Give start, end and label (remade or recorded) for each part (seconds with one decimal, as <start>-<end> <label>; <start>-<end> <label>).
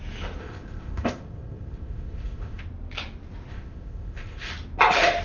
0.0-0.4 recorded; 0.4-2.6 remade; 2.6-3.5 recorded; 3.5-4.5 remade; 4.5-5.2 recorded